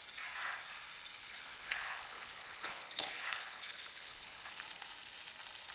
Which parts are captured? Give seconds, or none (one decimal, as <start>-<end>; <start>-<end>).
0.0-1.2; 4.6-5.7